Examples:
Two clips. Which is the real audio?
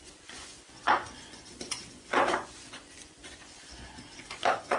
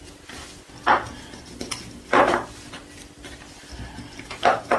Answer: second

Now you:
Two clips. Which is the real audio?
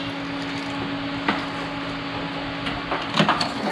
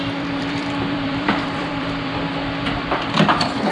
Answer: first